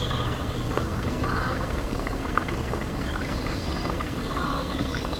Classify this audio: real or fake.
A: fake